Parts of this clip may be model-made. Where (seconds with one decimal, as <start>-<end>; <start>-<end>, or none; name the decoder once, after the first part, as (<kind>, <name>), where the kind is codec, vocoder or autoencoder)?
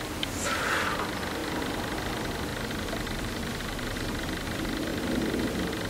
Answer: 2.5-4.2 (vocoder, BigVGAN v2)